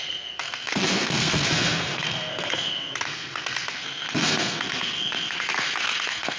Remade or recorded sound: remade